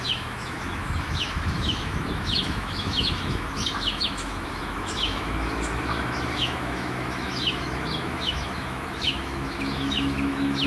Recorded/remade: remade